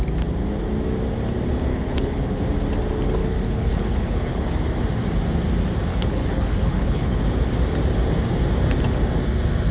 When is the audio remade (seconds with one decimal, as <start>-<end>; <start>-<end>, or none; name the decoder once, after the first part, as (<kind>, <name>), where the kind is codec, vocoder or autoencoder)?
1.7-2.4 (codec, HILCodec); 3.2-4.5; 5.9-7.2